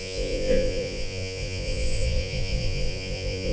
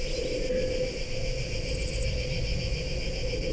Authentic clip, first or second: second